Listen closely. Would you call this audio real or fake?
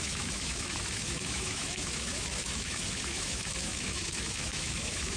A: fake